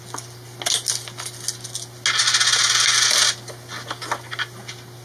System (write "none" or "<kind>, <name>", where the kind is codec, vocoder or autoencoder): none